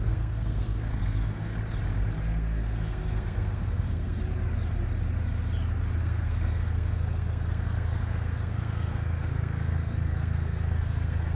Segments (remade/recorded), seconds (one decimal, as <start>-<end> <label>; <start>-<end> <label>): 0.0-1.5 remade; 1.5-2.2 recorded; 2.2-4.2 remade; 4.2-6.0 recorded; 6.0-11.3 remade

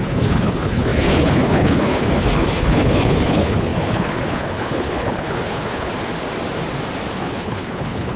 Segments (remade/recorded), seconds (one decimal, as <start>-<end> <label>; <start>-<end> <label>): 0.0-5.9 remade; 5.9-7.2 recorded; 7.2-8.2 remade

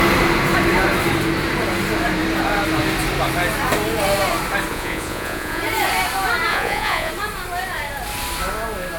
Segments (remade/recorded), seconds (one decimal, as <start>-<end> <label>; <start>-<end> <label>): 0.0-4.7 recorded; 4.7-5.6 remade; 5.6-6.5 recorded; 6.5-7.1 remade; 7.1-9.0 recorded

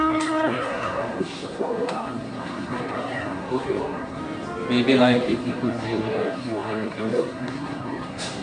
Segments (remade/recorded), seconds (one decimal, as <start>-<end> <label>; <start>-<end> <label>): 0.0-4.2 remade; 4.2-5.0 recorded; 5.0-8.4 remade

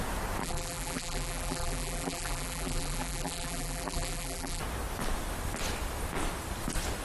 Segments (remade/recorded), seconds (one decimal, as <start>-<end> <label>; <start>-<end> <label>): 0.0-0.4 recorded; 0.4-4.6 remade; 4.6-7.0 recorded